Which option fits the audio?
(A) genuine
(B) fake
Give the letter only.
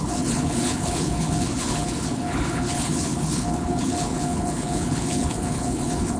B